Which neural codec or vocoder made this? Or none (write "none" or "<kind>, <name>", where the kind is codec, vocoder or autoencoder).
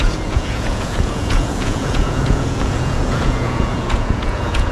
vocoder, Vocos